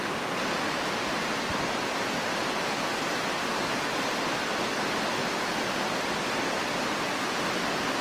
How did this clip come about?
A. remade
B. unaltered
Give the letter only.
A